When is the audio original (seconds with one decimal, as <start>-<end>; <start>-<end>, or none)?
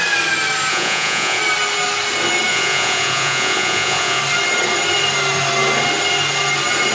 0.0-0.7; 1.4-2.5; 4.2-6.9